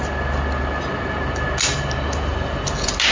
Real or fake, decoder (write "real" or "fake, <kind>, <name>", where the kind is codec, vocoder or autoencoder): real